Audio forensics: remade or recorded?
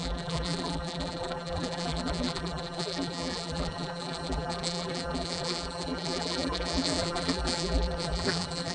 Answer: remade